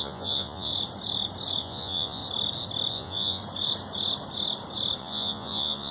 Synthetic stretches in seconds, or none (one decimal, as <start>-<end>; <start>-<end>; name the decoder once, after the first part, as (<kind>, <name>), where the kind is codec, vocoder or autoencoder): 0.0-0.7 (vocoder, Vocos); 1.6-2.2; 2.9-3.4; 5.0-5.9